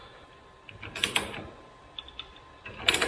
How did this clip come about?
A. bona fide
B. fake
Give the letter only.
B